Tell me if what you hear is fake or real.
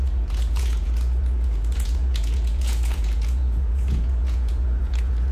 fake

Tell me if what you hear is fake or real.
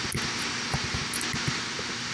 real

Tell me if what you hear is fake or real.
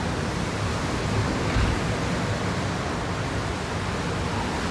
real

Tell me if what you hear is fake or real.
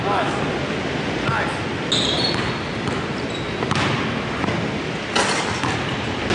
real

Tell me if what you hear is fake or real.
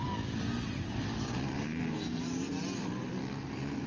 real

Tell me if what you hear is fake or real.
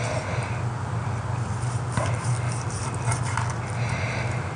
real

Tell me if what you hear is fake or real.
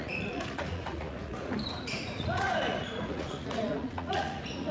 fake